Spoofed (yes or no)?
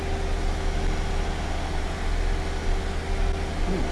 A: no